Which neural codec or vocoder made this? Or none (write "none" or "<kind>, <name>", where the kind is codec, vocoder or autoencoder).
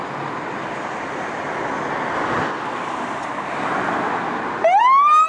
none